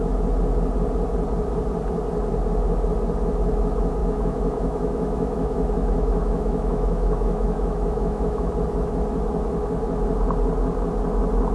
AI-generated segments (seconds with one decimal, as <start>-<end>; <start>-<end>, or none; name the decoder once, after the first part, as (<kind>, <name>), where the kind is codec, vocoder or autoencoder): 4.0-8.5 (autoencoder, DAC-VAE)